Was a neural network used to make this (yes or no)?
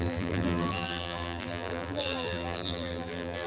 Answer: yes